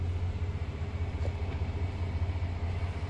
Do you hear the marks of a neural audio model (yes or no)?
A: no